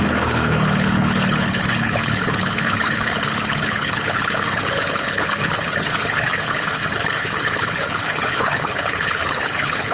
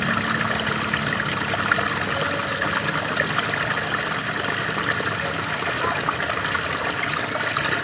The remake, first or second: first